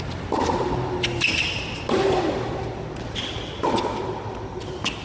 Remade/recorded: recorded